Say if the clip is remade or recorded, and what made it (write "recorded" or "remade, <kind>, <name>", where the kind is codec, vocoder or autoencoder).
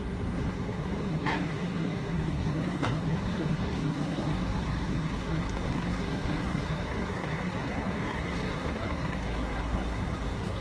remade, codec, SNAC